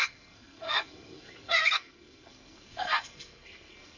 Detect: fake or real fake